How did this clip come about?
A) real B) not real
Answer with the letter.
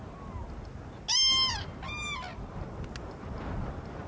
A